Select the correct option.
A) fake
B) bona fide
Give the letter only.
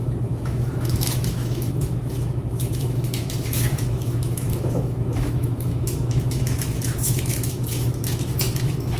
A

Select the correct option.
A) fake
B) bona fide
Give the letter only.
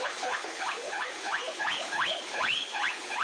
A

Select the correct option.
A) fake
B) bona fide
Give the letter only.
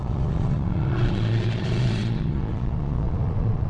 A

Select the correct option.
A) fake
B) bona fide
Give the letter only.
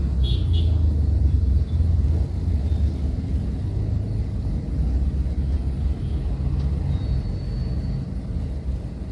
B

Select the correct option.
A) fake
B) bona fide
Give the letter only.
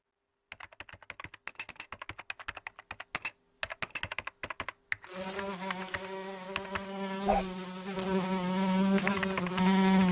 B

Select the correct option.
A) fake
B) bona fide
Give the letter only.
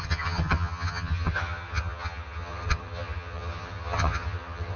A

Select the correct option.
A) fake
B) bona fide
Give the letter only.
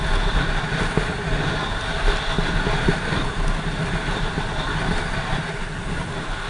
B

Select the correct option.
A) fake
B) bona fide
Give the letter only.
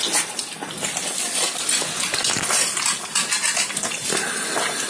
B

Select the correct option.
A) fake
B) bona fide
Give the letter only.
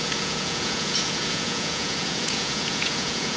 A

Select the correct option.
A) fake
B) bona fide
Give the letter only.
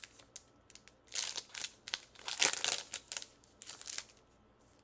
B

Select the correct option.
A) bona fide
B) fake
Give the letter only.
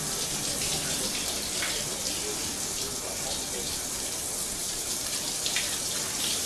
B